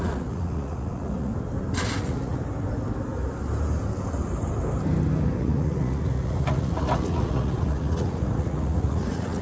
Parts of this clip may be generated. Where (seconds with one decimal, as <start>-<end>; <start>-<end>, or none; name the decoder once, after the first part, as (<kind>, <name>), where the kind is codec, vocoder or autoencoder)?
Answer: 0.0-1.3 (vocoder, Vocos); 2.0-2.4; 5.4-9.4

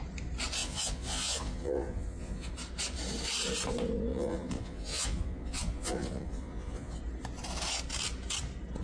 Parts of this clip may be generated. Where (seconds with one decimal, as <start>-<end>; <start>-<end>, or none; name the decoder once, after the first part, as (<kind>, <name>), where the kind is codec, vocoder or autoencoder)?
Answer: 0.6-2.5 (vocoder, Vocos); 4.1-7.0

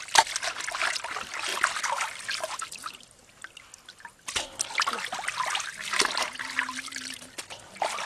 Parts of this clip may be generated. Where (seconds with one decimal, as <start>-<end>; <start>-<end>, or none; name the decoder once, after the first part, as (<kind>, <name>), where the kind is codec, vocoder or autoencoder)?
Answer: none